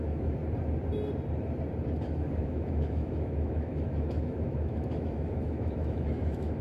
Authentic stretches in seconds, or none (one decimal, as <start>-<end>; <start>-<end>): 0.4-2.4